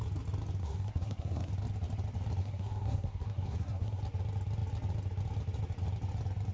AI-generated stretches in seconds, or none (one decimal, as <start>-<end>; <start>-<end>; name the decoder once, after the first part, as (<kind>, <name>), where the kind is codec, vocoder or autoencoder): 0.6-1.5 (codec, SNAC); 2.4-4.0

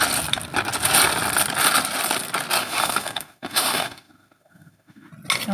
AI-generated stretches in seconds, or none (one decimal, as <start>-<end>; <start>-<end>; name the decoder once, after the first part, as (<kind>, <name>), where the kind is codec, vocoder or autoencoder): 2.6-5.1 (autoencoder, DAC-VAE)